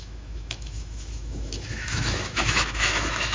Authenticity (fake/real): fake